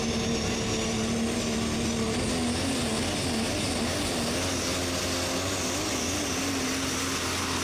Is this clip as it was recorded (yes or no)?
yes